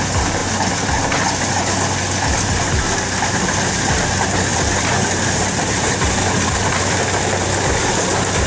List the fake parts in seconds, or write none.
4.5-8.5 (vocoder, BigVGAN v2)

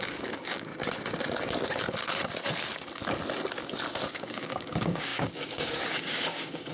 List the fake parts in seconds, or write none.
0.0-0.7 (codec, DAC); 4.1-6.7

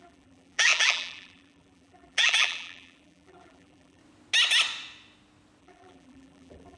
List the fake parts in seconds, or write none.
0.0-4.0 (vocoder, BigVGAN v2); 5.6-6.8

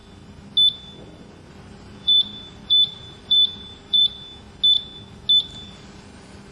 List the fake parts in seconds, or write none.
1.5-4.1 (vocoder, BigVGAN v2); 5.4-6.5

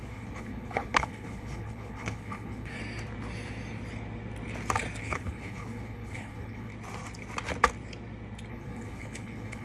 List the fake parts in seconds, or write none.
0.0-2.8 (codec, HILCodec); 5.0-6.7; 8.5-9.6

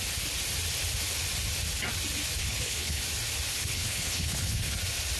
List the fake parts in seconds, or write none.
2.4-3.0 (codec, HILCodec); 3.5-4.8